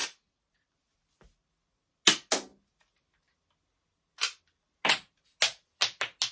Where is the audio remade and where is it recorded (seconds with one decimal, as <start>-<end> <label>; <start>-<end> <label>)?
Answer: 0.0-1.5 remade; 1.5-6.3 recorded